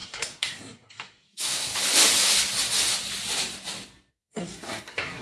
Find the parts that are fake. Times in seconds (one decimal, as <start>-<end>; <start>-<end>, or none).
0.0-1.7; 4.1-5.2